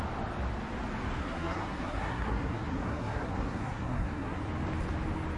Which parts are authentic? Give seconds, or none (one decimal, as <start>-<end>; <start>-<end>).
0.0-1.2; 4.4-5.4